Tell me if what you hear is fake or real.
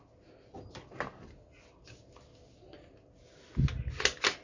real